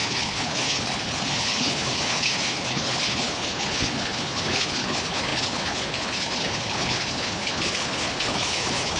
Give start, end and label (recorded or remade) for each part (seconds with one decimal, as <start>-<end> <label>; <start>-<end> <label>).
0.0-9.0 remade